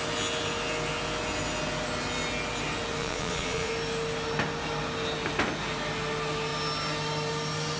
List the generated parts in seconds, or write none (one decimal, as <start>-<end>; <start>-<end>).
3.0-3.7